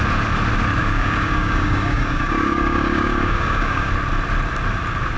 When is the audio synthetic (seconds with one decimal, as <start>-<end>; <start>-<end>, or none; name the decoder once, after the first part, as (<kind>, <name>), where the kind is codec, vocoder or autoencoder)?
0.8-3.9 (codec, DAC)